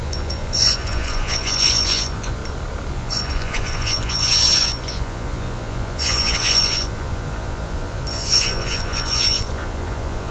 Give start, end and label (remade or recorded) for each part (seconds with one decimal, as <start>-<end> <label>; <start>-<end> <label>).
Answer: 0.0-2.4 remade; 2.4-2.9 recorded; 2.9-10.3 remade

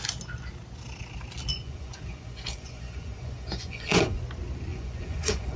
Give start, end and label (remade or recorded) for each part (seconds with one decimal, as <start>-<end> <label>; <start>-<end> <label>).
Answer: 0.0-1.5 recorded; 1.5-4.2 remade; 4.2-4.7 recorded; 4.7-5.6 remade